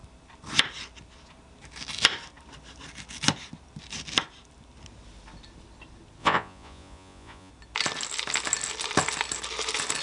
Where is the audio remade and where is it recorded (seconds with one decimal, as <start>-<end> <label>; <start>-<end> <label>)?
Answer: 0.0-6.2 recorded; 6.2-7.5 remade; 7.5-10.0 recorded